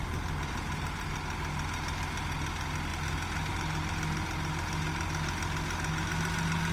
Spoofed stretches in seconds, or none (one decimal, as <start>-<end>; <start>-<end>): none